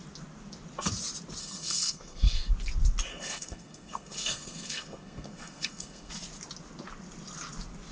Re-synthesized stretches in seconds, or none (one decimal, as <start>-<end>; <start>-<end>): 1.4-2.5; 3.1-6.1